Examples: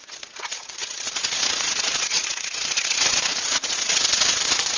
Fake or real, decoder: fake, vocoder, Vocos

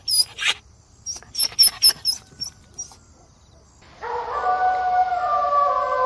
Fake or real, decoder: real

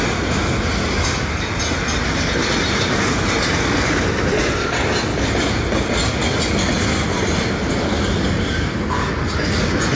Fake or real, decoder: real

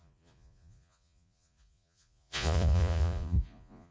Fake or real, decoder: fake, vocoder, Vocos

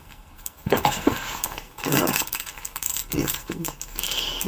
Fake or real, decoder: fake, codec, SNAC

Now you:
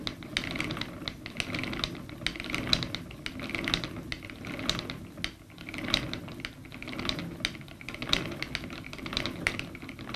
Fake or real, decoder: real